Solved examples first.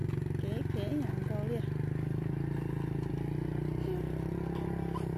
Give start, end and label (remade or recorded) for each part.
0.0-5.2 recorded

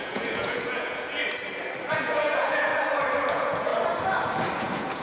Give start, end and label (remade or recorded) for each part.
0.0-1.2 remade; 1.2-1.9 recorded; 1.9-2.7 remade; 2.7-3.3 recorded; 3.3-3.7 remade; 3.7-4.6 recorded; 4.6-5.0 remade

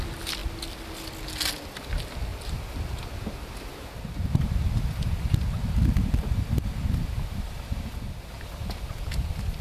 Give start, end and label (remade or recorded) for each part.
0.0-9.6 recorded

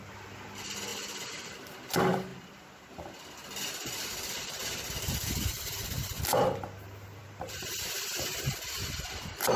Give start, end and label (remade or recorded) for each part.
0.0-0.9 recorded; 0.9-1.8 remade; 1.8-7.2 recorded; 7.2-8.5 remade; 8.5-9.6 recorded

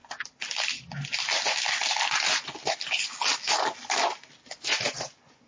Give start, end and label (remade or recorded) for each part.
0.0-4.7 recorded; 4.7-5.5 remade